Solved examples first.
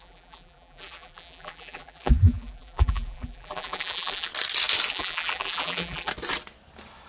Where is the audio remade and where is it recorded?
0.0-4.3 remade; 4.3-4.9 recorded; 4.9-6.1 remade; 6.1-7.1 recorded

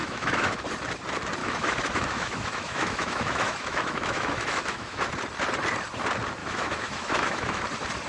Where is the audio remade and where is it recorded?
0.0-0.6 remade; 0.6-1.4 recorded; 1.4-5.1 remade; 5.1-6.4 recorded; 6.4-7.6 remade; 7.6-8.1 recorded

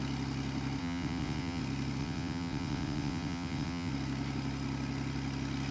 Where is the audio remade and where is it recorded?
0.0-0.8 recorded; 0.8-1.6 remade; 1.6-2.0 recorded; 2.0-3.9 remade; 3.9-5.7 recorded

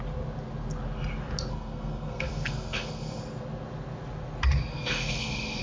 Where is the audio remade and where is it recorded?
0.0-1.5 recorded; 1.5-3.2 remade; 3.2-4.7 recorded; 4.7-5.6 remade

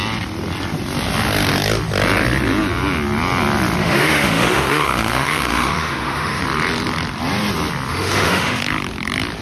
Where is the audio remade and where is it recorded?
0.0-3.8 recorded; 3.8-6.4 remade; 6.4-7.9 recorded; 7.9-8.6 remade; 8.6-9.4 recorded

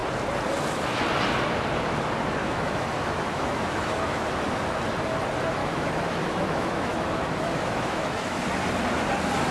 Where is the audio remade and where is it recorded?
0.0-2.4 recorded; 2.4-4.3 remade; 4.3-5.6 recorded; 5.6-8.4 remade; 8.4-9.5 recorded

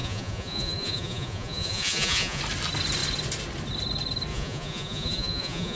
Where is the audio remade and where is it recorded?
0.0-2.4 remade; 2.4-4.3 recorded; 4.3-5.8 remade